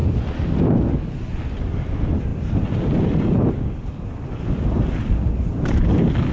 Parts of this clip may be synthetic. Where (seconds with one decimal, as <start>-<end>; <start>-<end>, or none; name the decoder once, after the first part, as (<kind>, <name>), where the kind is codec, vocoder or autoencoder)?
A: none